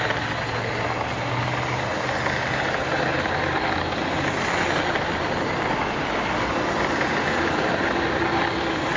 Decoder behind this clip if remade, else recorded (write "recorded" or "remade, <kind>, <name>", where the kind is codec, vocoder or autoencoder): recorded